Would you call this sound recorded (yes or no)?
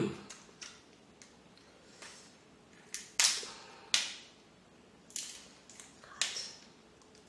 yes